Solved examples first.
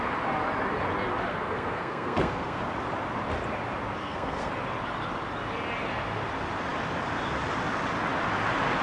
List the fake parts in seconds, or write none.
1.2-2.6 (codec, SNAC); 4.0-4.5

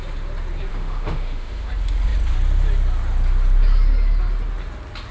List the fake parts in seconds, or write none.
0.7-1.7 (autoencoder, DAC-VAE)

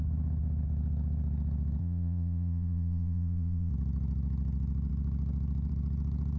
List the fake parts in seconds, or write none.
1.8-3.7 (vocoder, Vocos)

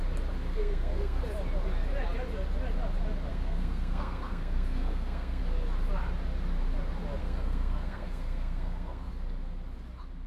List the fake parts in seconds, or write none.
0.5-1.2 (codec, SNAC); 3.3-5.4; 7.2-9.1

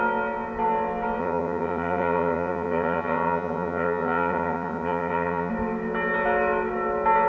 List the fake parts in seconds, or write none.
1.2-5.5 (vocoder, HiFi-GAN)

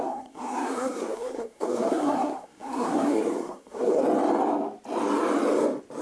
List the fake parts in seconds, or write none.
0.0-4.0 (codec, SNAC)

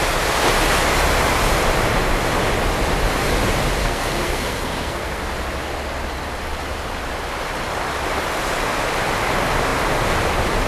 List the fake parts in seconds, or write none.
3.8-5.2 (codec, SNAC)